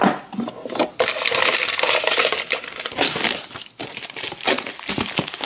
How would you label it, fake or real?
real